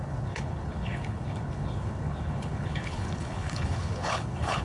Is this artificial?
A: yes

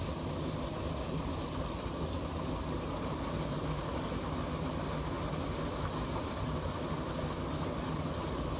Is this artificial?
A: no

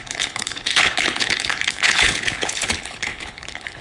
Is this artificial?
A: yes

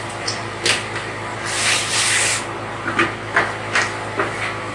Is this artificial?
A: no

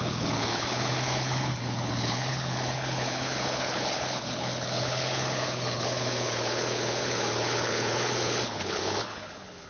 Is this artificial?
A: yes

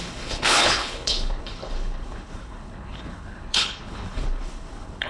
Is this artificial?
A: yes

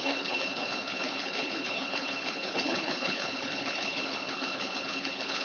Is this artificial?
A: yes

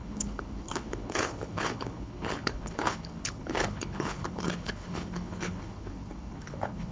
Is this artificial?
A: yes